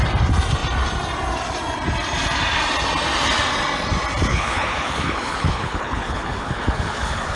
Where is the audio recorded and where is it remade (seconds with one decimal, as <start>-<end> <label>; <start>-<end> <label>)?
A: 0.0-4.3 recorded; 4.3-7.4 remade